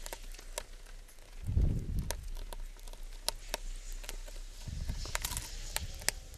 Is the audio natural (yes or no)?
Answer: yes